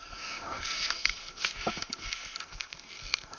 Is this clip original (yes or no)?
no